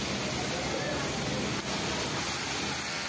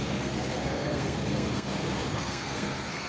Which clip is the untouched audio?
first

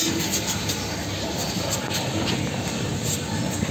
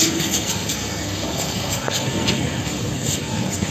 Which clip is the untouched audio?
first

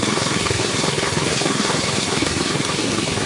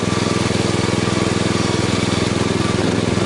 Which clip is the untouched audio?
second